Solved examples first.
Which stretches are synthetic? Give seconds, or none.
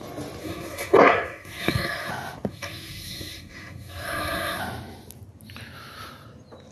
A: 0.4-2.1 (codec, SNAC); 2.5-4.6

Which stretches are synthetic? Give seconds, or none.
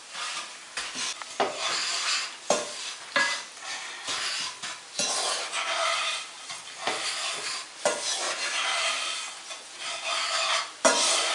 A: none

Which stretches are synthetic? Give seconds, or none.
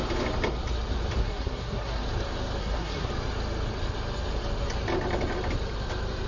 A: 1.2-2.0 (codec, SNAC); 2.6-3.1